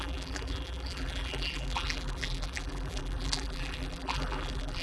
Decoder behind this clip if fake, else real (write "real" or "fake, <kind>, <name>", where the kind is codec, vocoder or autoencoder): fake, vocoder, BigVGAN v2